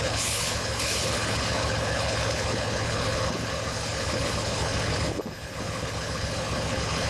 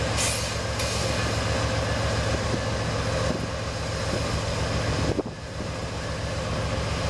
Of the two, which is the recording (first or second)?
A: second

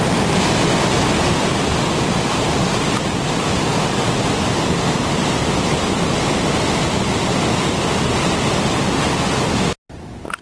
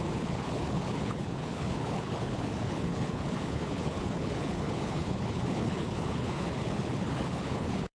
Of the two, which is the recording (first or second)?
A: first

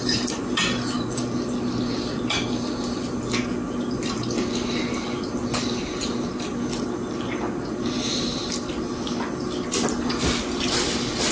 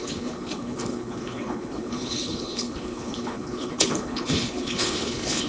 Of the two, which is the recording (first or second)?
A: first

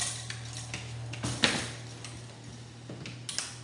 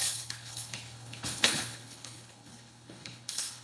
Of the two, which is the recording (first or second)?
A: first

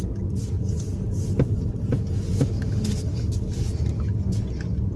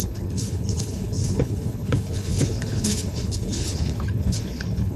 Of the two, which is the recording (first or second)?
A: first